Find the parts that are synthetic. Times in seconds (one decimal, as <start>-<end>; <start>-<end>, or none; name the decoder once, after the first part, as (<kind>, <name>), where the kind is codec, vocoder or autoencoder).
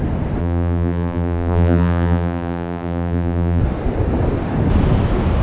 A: 0.4-3.6 (vocoder, BigVGAN v2)